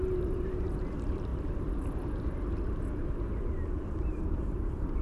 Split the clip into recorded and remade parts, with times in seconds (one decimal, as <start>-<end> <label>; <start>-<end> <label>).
0.0-1.3 remade; 1.3-4.1 recorded; 4.1-5.0 remade